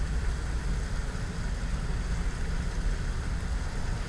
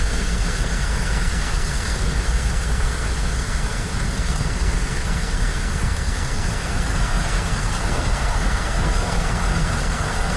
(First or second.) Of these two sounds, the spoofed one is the second